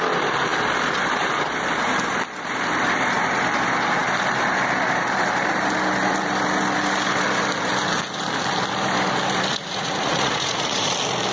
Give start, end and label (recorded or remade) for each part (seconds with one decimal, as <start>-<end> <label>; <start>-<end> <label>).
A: 0.0-9.5 recorded; 9.5-10.9 remade; 10.9-11.3 recorded